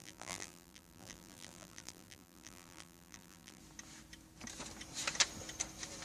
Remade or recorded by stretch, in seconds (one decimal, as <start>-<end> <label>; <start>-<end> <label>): 0.0-3.6 remade; 3.6-6.0 recorded

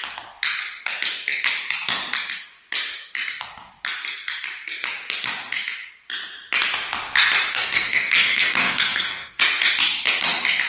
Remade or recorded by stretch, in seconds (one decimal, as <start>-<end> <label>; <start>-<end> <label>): 0.0-7.5 recorded; 7.5-9.4 remade; 9.4-10.7 recorded

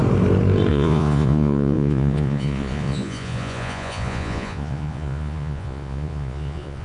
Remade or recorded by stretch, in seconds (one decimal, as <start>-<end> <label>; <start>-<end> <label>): 0.0-0.7 recorded; 0.7-6.8 remade

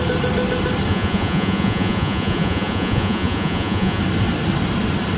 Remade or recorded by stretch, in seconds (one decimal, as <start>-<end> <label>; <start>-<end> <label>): 0.0-0.9 recorded; 0.9-4.0 remade; 4.0-5.2 recorded

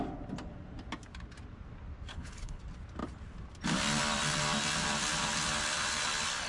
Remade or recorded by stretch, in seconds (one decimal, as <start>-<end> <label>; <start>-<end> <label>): 0.0-2.1 recorded; 2.1-2.6 remade; 2.6-6.5 recorded